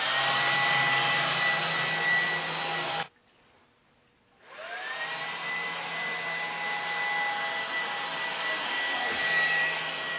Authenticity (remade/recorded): recorded